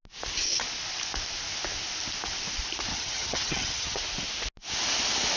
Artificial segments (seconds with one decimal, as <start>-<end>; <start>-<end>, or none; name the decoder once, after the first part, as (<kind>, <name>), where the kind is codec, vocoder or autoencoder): 2.9-4.0 (vocoder, HiFi-GAN)